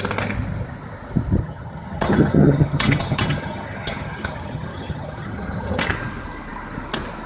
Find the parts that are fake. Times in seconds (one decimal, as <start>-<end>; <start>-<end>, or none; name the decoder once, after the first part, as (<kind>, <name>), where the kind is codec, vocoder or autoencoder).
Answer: 1.4-5.8 (vocoder, HiFi-GAN)